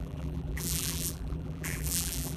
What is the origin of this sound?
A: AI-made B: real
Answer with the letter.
A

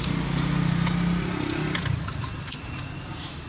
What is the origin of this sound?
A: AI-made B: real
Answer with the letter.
B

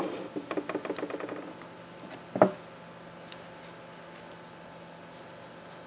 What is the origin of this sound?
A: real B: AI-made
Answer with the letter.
A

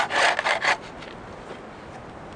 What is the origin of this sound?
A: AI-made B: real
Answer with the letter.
B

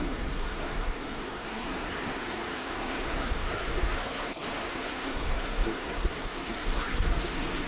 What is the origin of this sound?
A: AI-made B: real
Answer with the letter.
A